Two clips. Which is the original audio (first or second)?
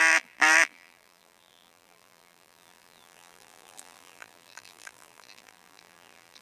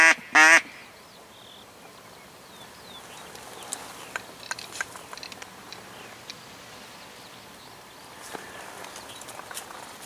second